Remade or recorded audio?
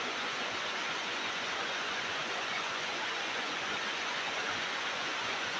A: remade